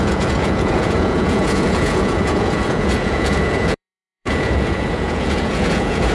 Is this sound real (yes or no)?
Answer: no